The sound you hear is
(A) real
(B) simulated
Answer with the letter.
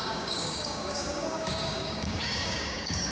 B